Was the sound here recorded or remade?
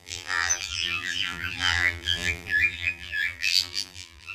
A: remade